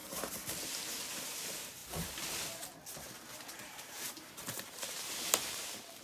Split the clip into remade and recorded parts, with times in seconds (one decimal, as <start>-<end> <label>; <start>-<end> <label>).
0.0-1.2 recorded; 1.2-1.8 remade; 1.8-3.5 recorded; 3.5-6.0 remade